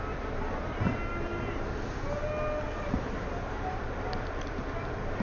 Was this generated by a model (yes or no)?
no